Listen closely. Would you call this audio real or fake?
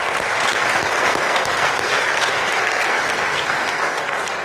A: fake